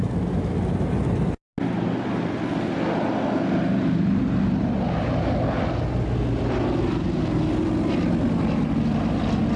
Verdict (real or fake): real